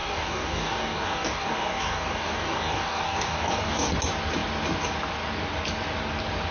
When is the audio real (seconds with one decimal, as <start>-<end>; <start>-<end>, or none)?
3.9-6.5